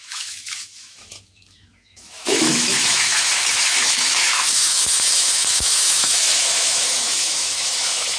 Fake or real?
fake